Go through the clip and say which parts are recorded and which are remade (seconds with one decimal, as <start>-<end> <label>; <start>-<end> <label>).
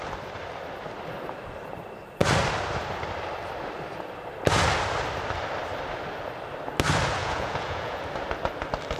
0.0-7.2 recorded; 7.2-8.0 remade; 8.0-9.0 recorded